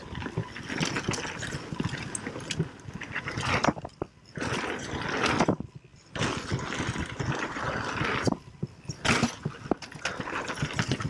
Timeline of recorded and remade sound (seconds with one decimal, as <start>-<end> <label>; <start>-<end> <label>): 0.0-11.1 recorded